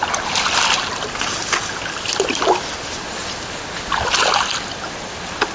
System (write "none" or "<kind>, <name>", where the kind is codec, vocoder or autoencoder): none